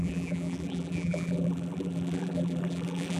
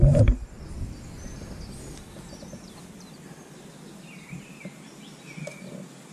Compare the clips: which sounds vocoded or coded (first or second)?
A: first